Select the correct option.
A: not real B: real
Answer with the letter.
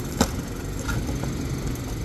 B